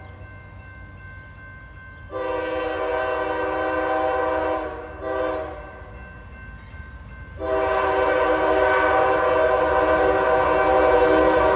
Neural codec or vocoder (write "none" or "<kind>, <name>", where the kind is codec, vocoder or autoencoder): none